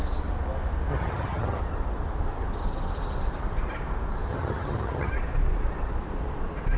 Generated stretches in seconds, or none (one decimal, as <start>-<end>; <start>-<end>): 0.9-1.6; 4.3-5.1

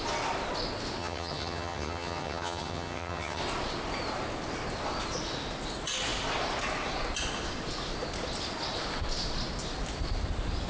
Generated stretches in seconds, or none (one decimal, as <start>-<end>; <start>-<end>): 1.0-3.4

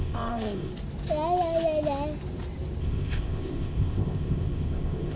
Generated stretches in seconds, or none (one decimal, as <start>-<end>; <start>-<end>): 0.0-0.7; 2.8-5.2